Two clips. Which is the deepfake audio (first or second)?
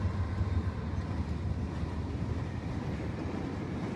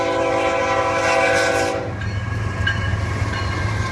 second